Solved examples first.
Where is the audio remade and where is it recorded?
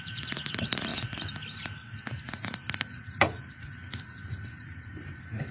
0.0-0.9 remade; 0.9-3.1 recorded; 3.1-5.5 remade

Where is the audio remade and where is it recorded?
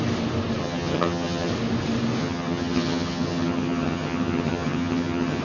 0.0-0.6 recorded; 0.6-1.5 remade; 1.5-2.2 recorded; 2.2-5.4 remade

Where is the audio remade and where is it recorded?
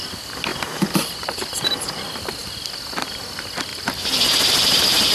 0.0-3.7 recorded; 3.7-5.1 remade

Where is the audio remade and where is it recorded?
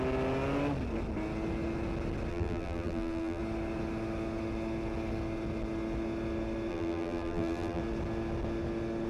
0.0-2.3 recorded; 2.3-3.4 remade; 3.4-6.7 recorded; 6.7-7.8 remade; 7.8-9.1 recorded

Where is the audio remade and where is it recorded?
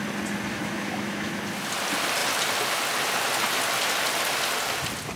0.0-0.5 recorded; 0.5-1.4 remade; 1.4-5.2 recorded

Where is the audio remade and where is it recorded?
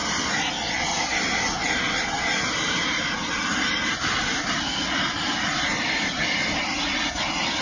0.0-7.6 recorded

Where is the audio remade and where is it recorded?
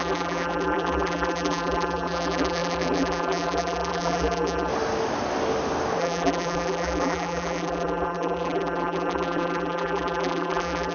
0.0-4.7 remade; 4.7-6.0 recorded; 6.0-10.9 remade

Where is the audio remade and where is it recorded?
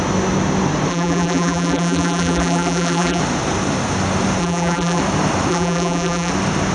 0.0-0.9 recorded; 0.9-3.2 remade; 3.2-4.4 recorded; 4.4-5.0 remade; 5.0-5.5 recorded; 5.5-6.3 remade; 6.3-6.7 recorded